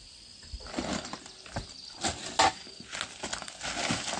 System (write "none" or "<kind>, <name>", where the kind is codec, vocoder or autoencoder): none